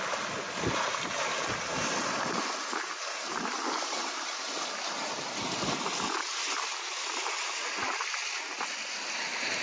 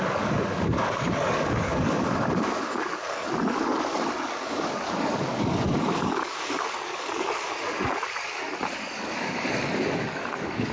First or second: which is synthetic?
second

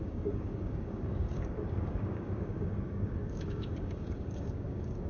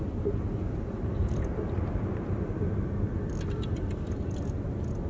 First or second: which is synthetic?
first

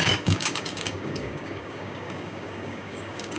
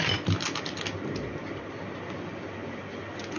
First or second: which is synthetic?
first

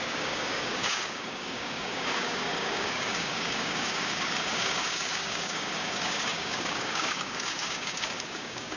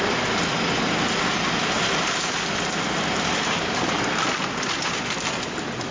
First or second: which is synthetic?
first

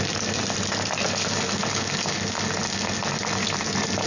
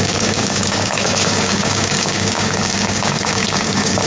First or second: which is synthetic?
second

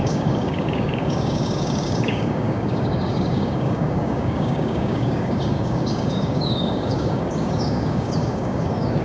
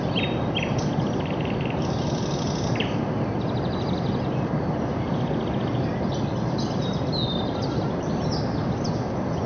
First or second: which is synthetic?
first